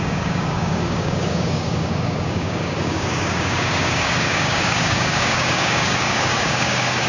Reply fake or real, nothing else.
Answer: fake